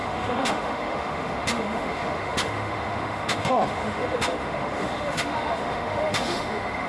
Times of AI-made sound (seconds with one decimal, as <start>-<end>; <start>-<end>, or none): 0.0-6.9